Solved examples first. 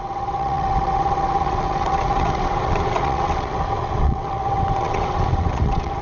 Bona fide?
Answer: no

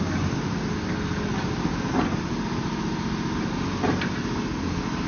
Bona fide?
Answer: yes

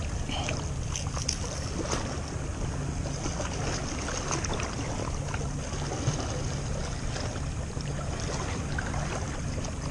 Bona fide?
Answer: yes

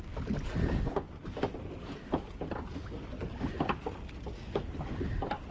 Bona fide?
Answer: yes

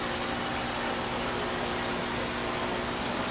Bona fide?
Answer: yes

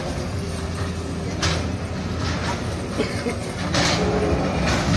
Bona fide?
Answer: yes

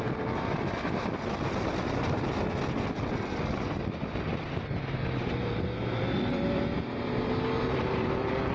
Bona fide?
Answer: no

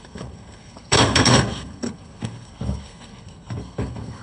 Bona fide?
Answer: no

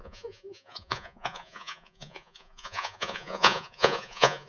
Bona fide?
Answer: no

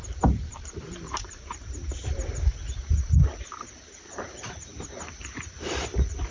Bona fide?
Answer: no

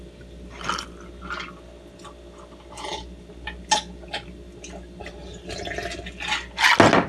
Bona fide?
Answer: yes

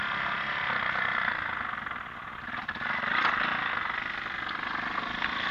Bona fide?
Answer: yes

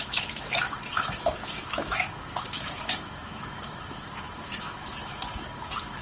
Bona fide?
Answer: no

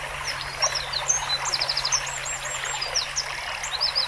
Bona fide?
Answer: yes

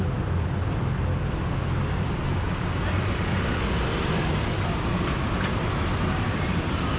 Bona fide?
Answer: no